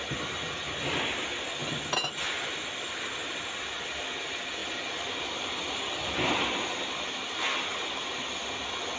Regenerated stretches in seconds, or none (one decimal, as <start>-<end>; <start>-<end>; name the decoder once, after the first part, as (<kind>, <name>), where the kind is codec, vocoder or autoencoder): none